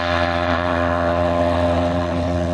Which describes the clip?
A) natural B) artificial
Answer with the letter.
B